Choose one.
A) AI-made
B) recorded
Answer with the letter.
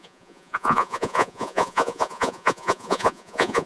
A